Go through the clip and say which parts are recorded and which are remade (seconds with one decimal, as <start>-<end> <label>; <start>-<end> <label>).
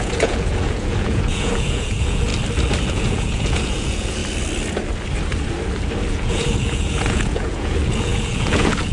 0.0-2.3 remade; 2.3-2.9 recorded; 2.9-4.2 remade; 4.2-6.1 recorded; 6.1-8.9 remade